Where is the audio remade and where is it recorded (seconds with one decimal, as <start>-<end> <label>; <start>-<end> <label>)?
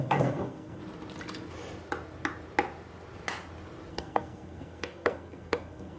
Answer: 0.0-0.8 remade; 0.8-3.9 recorded; 3.9-6.0 remade